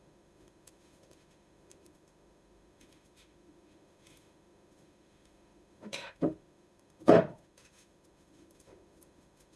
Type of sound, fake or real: fake